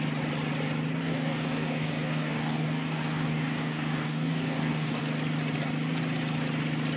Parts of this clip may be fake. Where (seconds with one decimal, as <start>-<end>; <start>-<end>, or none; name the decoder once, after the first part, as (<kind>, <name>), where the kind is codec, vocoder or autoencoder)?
1.0-5.0 (codec, DAC)